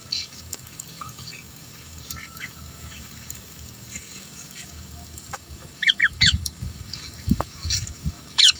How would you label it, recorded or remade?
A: remade